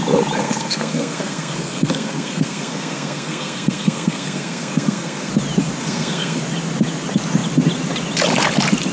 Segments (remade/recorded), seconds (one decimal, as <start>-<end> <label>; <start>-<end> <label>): 0.0-0.4 recorded; 0.4-5.3 remade; 5.3-5.8 recorded; 5.8-6.4 remade; 6.4-8.9 recorded

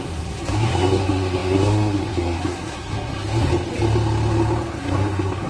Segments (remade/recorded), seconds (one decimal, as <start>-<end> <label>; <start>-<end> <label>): 0.0-3.5 remade; 3.5-4.8 recorded; 4.8-5.5 remade

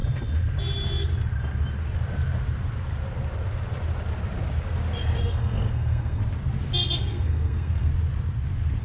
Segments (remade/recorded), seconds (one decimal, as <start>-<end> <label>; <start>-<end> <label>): 0.0-5.2 recorded; 5.2-6.2 remade; 6.2-6.9 recorded; 6.9-7.9 remade; 7.9-8.8 recorded

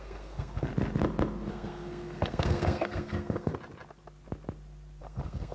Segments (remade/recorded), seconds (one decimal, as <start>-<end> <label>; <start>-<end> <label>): 0.0-0.7 remade; 0.7-1.5 recorded; 1.5-3.5 remade; 3.5-5.0 recorded; 5.0-5.5 remade

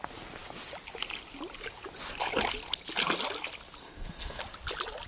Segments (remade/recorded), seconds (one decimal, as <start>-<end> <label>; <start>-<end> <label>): 0.0-3.8 recorded; 3.8-4.4 remade; 4.4-5.1 recorded

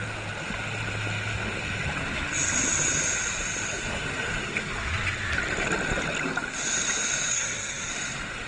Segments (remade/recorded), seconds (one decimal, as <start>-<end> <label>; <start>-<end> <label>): 0.0-7.3 recorded; 7.3-7.9 remade; 7.9-8.5 recorded

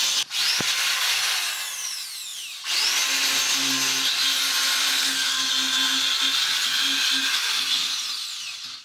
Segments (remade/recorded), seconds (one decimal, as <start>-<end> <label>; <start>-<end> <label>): 0.0-4.9 recorded; 4.9-5.5 remade; 5.5-8.8 recorded